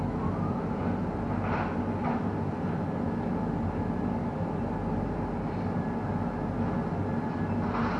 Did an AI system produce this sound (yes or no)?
no